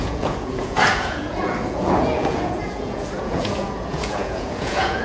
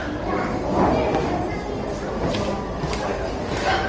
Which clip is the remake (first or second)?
first